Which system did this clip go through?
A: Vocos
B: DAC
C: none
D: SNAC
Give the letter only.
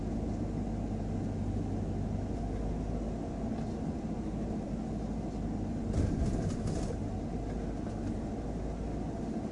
C